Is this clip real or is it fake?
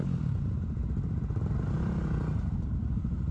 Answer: fake